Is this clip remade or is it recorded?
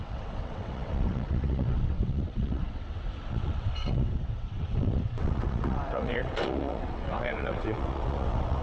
remade